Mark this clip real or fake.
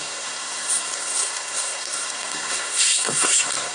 fake